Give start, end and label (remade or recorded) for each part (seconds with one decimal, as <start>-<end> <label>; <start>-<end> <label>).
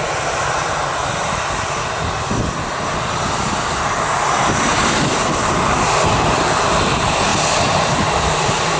0.0-8.8 recorded